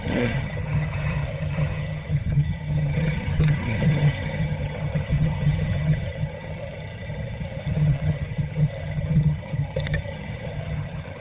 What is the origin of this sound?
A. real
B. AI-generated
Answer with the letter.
B